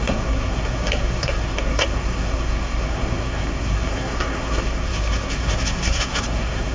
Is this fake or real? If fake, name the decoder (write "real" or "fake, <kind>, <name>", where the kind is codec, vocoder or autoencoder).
fake, codec, SNAC